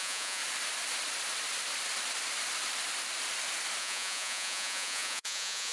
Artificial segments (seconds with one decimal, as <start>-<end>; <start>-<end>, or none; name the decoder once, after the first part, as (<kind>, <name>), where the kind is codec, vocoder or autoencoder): 0.0-0.4 (vocoder, Vocos); 3.8-5.7